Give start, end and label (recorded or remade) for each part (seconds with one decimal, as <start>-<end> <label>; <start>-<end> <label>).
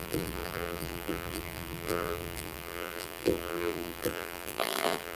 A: 0.0-5.2 remade